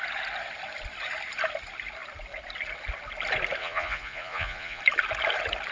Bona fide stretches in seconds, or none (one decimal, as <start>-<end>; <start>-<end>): 0.0-3.6; 4.8-5.7